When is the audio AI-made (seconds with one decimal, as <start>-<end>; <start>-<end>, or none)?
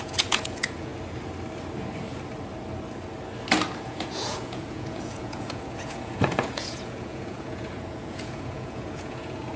0.0-0.9; 3.8-9.6